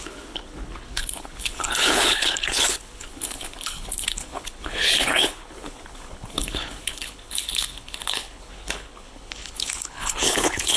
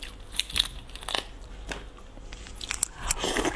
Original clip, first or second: second